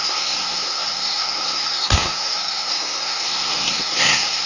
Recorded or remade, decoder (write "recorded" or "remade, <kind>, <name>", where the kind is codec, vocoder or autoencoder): remade, codec, SNAC